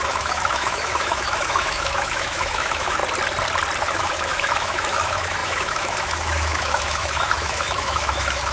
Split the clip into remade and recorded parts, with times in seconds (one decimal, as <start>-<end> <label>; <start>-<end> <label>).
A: 0.0-3.0 remade; 3.0-3.8 recorded; 3.8-8.5 remade